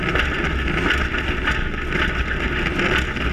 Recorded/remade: recorded